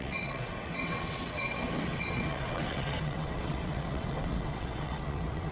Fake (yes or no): yes